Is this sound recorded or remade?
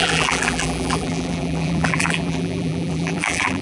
remade